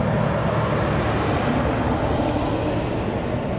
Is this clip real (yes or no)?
yes